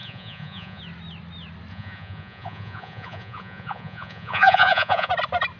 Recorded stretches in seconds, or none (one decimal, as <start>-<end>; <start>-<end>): 0.8-1.7; 5.1-5.6